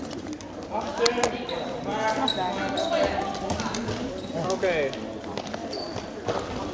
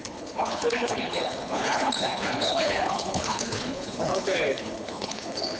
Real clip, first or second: first